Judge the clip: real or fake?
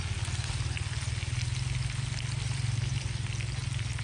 real